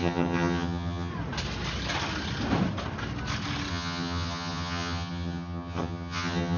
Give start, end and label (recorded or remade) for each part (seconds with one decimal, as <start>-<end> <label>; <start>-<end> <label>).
0.0-1.1 remade; 1.1-3.7 recorded; 3.7-6.6 remade